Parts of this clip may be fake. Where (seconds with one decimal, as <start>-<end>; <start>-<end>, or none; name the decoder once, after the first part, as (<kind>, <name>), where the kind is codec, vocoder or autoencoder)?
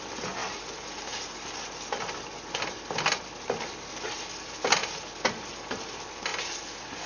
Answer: none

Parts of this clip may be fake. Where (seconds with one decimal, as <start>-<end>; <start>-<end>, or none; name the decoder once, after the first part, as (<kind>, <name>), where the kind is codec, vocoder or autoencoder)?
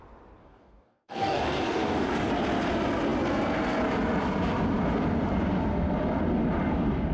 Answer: 0.4-2.3 (codec, DAC)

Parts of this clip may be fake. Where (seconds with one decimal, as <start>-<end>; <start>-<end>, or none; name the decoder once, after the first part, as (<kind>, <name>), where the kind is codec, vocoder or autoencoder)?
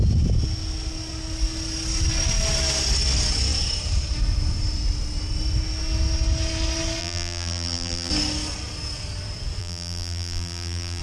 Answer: 7.0-8.1 (vocoder, BigVGAN v2); 9.6-11.0